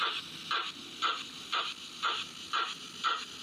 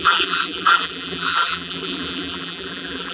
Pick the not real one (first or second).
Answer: second